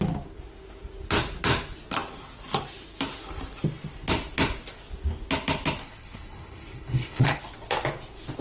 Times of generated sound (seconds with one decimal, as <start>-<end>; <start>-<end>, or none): 5.8-7.4